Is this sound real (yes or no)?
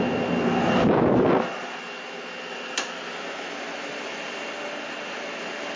yes